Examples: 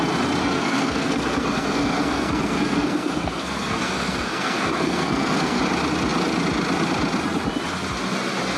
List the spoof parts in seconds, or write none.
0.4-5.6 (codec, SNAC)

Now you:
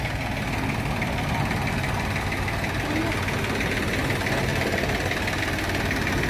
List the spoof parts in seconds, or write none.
none

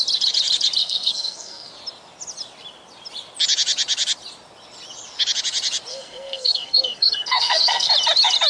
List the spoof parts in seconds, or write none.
0.8-1.7 (codec, SNAC); 5.9-7.9

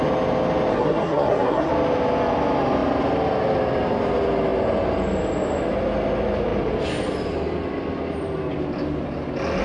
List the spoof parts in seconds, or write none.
0.7-1.7 (codec, SNAC)

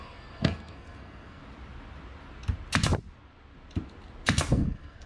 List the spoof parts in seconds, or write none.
0.0-1.4 (codec, SNAC); 4.5-5.1